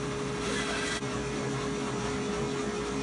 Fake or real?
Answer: real